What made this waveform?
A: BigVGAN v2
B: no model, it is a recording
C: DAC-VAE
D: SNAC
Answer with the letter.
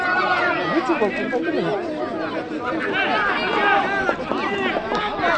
B